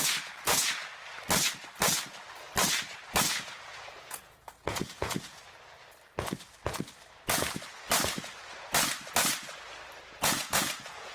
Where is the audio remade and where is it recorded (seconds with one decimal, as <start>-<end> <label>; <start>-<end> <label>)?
0.0-0.8 remade; 0.8-3.2 recorded; 3.2-5.4 remade; 5.4-10.0 recorded; 10.0-11.1 remade